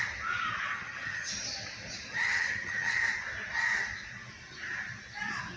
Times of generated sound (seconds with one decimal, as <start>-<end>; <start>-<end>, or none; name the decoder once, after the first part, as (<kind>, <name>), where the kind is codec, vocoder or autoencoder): 0.7-1.3 (vocoder, HiFi-GAN); 2.1-3.0